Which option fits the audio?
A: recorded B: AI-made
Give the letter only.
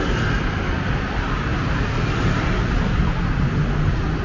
A